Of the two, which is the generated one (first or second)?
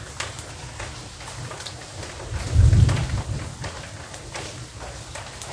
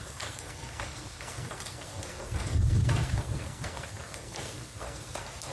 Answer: second